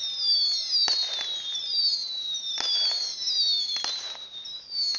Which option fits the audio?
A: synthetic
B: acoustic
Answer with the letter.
B